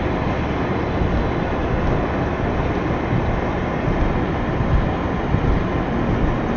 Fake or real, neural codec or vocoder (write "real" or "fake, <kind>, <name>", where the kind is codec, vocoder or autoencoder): real